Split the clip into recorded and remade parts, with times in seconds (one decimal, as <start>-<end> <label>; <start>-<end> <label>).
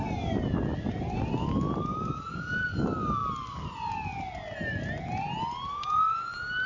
0.0-6.7 recorded